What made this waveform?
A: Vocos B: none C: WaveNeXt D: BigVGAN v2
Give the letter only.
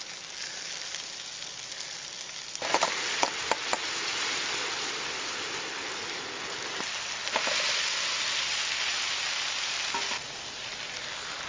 B